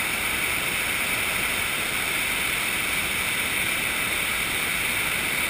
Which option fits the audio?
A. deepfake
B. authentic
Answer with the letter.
B